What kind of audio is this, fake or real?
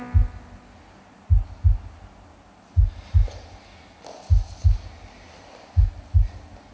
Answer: real